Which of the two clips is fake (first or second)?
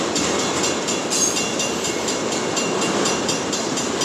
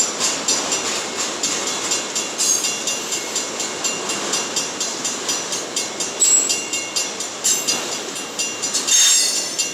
first